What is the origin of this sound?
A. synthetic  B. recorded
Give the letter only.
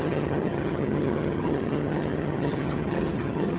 A